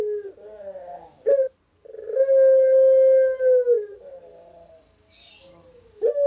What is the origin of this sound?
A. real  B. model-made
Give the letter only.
A